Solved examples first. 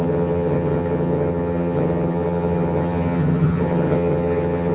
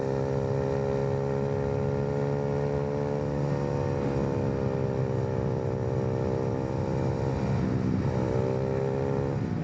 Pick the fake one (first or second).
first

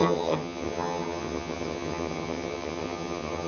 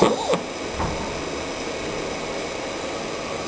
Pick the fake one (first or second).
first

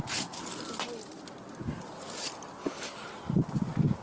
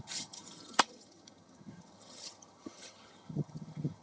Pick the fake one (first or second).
second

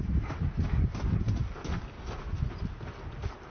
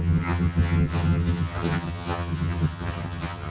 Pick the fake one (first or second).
second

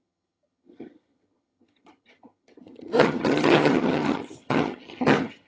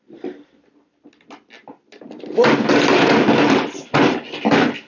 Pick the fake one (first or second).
first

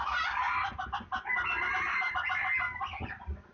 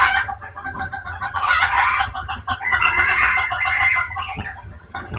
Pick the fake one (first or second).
second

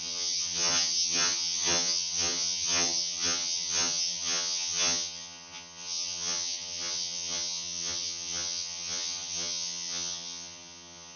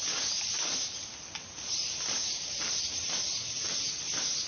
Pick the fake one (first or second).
first